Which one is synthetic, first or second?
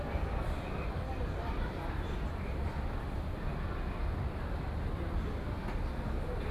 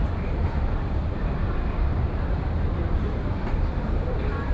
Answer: second